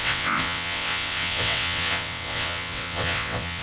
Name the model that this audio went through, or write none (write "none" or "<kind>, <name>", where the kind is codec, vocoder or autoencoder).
vocoder, WaveNeXt